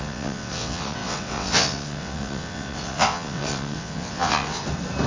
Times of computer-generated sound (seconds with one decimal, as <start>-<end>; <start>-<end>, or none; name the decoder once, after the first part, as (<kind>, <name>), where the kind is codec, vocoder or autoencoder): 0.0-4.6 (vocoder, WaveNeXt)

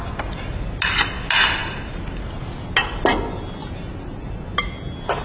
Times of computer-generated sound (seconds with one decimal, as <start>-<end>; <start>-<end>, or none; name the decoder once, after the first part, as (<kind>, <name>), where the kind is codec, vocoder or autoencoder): 1.6-2.2 (vocoder, BigVGAN v2); 3.6-4.3

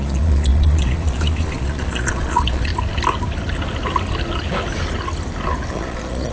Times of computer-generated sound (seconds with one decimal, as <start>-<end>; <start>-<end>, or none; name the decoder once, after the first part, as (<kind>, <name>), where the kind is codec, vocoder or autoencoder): 0.0-2.7 (vocoder, Vocos); 5.7-6.3